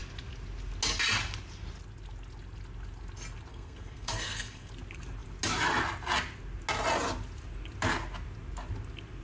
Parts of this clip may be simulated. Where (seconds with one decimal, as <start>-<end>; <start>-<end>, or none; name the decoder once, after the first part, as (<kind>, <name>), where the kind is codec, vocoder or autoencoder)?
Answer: 3.5-4.7 (codec, SNAC)